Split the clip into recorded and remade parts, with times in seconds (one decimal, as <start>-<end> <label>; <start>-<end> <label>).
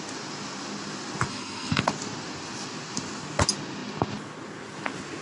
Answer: 0.0-1.3 recorded; 1.3-1.8 remade; 1.8-5.2 recorded